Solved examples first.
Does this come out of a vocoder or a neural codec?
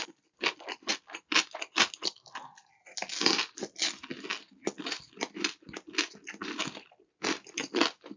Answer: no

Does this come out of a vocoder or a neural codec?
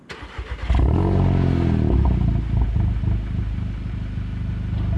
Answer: no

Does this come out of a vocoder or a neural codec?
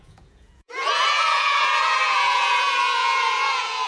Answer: yes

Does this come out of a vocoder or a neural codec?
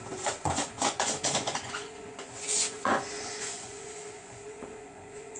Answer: yes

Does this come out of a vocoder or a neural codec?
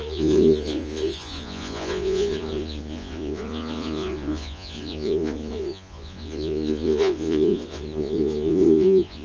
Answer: yes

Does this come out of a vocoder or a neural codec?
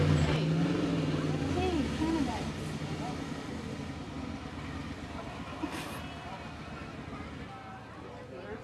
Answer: no